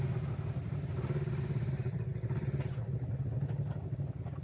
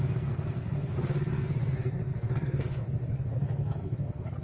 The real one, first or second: first